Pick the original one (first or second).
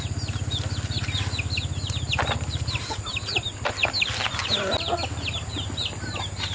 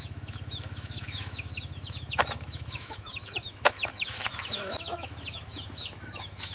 first